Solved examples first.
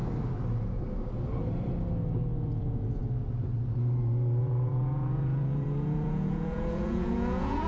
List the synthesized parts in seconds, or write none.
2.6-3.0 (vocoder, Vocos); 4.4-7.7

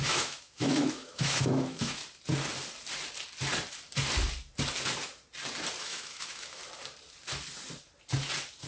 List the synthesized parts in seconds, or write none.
0.0-2.0 (autoencoder, DAC-VAE); 5.8-6.6